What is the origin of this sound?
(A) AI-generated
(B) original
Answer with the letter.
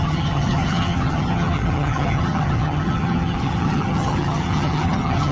A